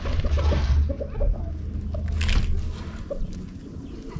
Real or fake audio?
real